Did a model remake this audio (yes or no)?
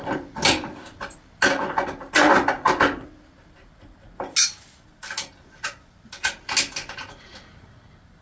no